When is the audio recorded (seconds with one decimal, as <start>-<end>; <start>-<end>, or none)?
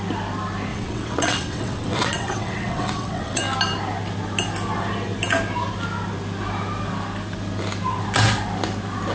0.0-0.7; 3.4-9.1